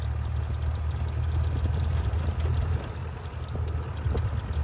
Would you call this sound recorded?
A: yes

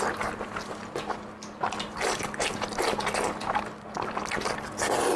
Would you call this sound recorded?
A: yes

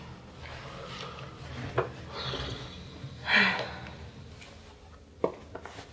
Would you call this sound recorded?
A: yes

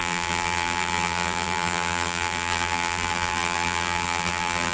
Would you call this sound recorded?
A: no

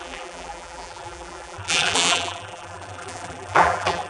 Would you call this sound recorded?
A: no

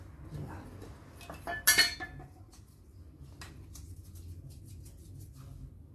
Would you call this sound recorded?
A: yes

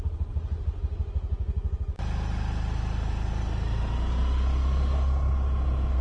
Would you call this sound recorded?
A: yes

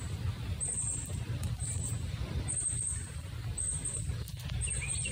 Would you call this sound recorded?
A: yes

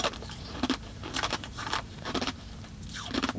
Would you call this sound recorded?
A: no